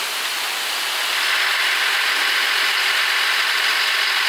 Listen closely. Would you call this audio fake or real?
real